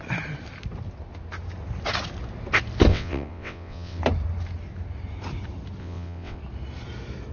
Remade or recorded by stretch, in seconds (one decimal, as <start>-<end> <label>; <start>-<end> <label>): 0.0-2.9 recorded; 2.9-4.0 remade; 4.0-5.8 recorded; 5.8-6.4 remade; 6.4-7.3 recorded